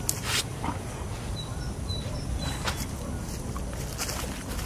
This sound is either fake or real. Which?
real